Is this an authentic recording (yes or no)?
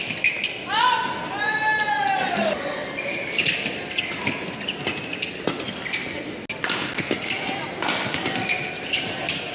yes